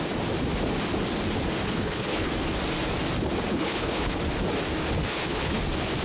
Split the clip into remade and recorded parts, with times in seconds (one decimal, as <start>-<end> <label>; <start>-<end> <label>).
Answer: 0.0-1.6 recorded; 1.6-2.3 remade; 2.3-3.5 recorded; 3.5-4.2 remade; 4.2-5.0 recorded; 5.0-5.6 remade; 5.6-6.0 recorded